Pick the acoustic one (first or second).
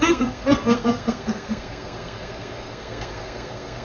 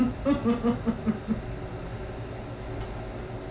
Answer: second